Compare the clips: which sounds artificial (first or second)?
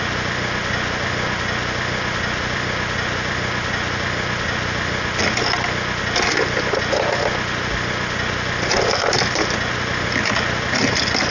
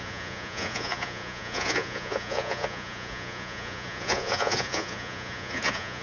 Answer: second